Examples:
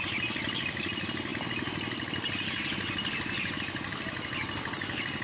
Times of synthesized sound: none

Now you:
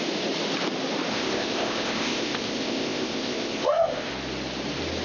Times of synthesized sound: 1.1-4.1 (codec, ZipCodec)

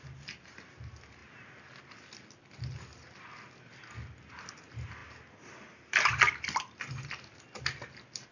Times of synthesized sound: none